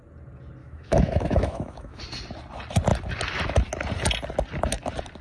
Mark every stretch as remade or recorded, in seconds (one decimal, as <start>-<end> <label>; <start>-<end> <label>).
0.0-0.6 recorded; 0.6-2.0 remade; 2.0-5.2 recorded